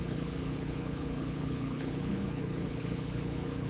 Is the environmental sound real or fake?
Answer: fake